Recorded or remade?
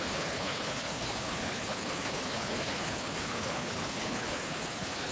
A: remade